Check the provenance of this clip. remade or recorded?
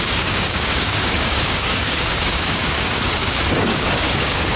remade